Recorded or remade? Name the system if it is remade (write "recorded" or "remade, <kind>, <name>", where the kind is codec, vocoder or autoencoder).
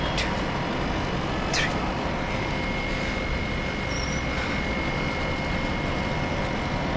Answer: recorded